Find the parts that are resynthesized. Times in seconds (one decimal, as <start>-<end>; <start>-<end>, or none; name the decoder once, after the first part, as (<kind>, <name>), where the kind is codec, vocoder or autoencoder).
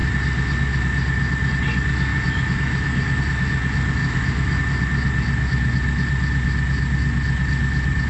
2.1-3.2 (autoencoder, DAC-VAE); 4.0-4.6